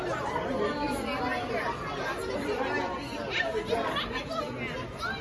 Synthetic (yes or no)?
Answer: no